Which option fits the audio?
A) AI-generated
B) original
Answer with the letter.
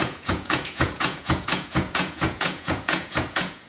A